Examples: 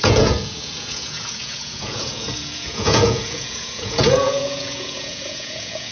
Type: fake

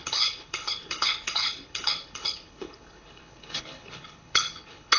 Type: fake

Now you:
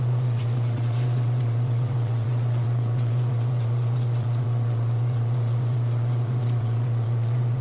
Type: fake